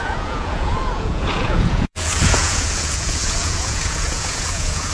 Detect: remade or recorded remade